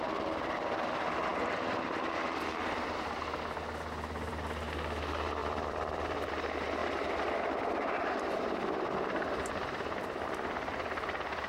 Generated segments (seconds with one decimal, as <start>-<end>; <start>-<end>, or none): 5.4-6.3; 6.8-11.5